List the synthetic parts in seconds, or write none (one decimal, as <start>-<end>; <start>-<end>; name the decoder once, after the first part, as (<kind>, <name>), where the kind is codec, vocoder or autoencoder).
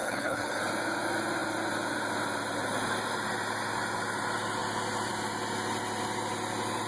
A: 0.0-0.6 (codec, HILCodec)